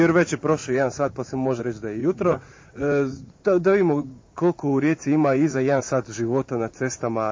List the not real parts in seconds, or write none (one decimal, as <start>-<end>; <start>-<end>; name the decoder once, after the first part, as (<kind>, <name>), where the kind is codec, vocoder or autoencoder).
0.6-1.6 (vocoder, Vocos); 2.0-5.8